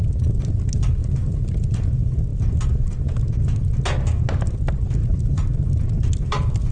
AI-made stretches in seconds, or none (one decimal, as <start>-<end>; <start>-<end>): 1.0-1.9; 5.0-5.9